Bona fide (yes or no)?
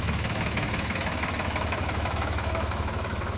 no